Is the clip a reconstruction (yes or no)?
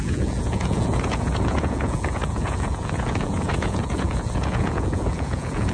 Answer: yes